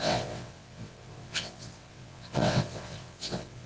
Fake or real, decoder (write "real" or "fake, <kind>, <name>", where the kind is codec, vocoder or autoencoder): fake, vocoder, WaveNeXt